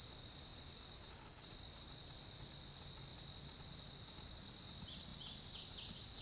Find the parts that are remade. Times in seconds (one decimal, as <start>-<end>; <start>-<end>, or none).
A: none